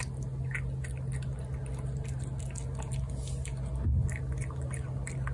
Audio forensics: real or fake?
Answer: real